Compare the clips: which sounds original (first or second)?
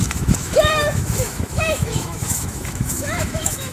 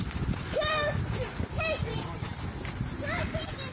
second